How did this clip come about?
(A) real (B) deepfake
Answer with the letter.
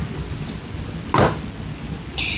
A